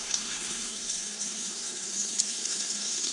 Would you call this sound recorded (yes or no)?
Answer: no